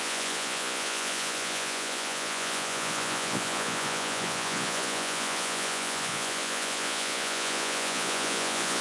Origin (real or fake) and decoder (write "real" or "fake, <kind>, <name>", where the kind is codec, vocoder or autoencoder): fake, vocoder, Vocos